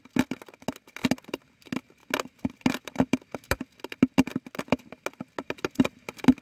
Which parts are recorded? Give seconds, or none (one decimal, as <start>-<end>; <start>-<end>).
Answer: 0.0-6.4